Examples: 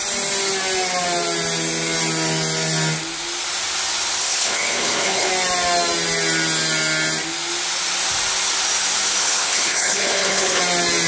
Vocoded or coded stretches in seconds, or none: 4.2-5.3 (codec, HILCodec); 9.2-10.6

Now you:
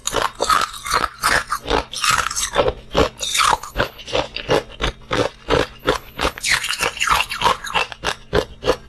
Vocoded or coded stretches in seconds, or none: 3.3-4.0 (codec, HILCodec); 5.8-6.6

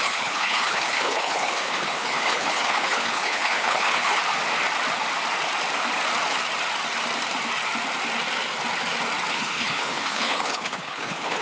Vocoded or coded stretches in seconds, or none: 0.0-4.2 (codec, HILCodec); 9.3-11.4

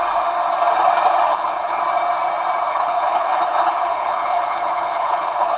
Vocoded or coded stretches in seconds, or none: 1.3-1.8 (codec, HILCodec); 2.7-5.6

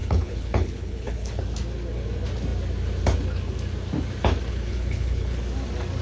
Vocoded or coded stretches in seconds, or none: 0.0-1.4 (codec, HILCodec); 4.5-5.4

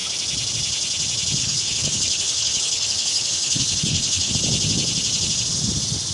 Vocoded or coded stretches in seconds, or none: 1.4-4.3 (codec, HILCodec)

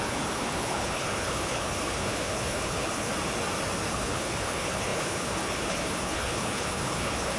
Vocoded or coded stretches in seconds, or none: 0.0-3.1 (codec, HILCodec); 3.9-7.4

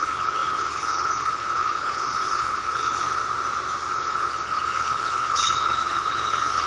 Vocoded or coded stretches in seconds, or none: 0.0-3.2 (codec, HILCodec); 3.9-6.7